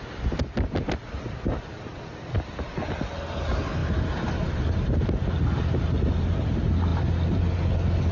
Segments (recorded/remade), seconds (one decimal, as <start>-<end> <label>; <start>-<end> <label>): 0.0-8.1 recorded